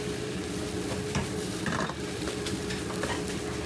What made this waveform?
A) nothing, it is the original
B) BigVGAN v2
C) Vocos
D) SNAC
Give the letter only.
B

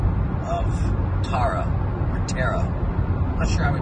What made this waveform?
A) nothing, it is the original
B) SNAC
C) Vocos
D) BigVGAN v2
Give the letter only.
A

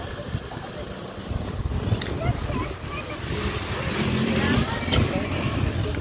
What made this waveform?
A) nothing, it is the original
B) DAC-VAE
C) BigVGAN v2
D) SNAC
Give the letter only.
C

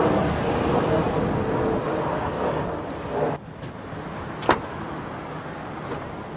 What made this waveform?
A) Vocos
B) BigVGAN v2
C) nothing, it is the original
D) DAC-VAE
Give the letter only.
C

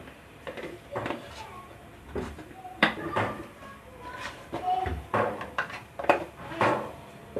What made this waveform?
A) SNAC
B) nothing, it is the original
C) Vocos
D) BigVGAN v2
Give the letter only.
D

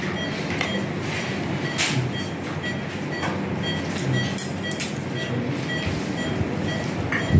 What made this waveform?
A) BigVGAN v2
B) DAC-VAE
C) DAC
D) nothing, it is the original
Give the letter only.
D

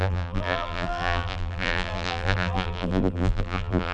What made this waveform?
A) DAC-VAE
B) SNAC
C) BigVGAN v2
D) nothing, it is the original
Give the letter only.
C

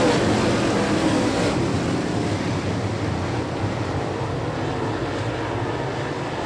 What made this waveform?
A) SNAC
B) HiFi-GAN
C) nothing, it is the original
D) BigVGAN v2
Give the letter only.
C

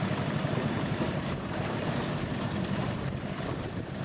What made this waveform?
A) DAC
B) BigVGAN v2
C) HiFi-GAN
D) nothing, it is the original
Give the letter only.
B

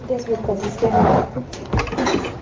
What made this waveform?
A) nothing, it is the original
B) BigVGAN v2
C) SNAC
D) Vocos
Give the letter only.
B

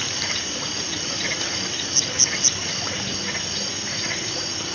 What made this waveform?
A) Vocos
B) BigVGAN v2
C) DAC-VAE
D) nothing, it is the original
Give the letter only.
D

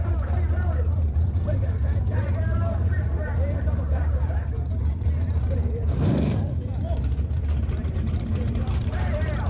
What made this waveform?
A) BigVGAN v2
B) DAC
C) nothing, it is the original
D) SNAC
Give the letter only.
A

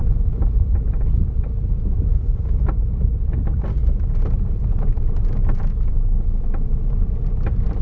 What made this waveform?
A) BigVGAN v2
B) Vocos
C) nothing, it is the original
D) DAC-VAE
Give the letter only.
A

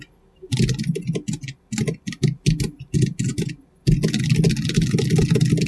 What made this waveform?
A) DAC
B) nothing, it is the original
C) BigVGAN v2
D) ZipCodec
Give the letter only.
B